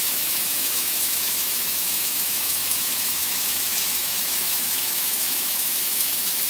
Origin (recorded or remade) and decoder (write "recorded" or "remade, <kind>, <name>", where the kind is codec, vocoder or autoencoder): remade, autoencoder, DAC-VAE